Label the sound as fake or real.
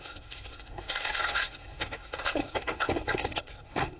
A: fake